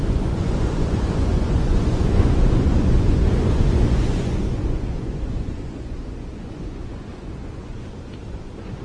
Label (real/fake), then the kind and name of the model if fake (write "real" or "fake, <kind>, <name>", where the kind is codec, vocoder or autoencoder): fake, vocoder, Vocos